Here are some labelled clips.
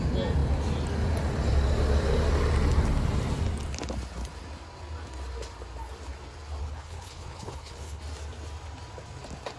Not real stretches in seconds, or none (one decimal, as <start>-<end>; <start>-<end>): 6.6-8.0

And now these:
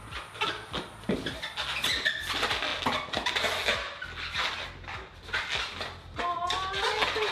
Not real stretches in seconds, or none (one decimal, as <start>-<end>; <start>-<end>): none

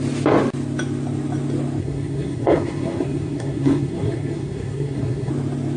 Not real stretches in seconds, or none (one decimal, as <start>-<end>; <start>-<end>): 1.8-5.3

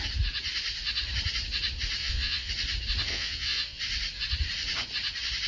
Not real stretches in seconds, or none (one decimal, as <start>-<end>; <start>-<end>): 2.0-2.5; 3.1-3.8